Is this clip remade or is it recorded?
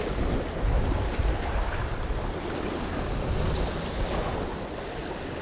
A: recorded